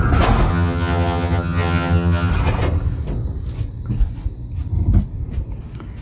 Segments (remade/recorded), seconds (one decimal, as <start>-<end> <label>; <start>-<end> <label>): 0.0-0.5 recorded; 0.5-2.3 remade; 2.3-6.0 recorded